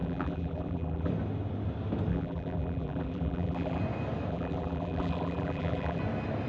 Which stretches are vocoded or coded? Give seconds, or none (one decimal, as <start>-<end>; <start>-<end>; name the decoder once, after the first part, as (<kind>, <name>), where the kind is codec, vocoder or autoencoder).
0.0-1.1 (vocoder, BigVGAN v2); 2.1-3.8; 4.3-6.0